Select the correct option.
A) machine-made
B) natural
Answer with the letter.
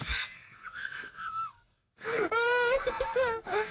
A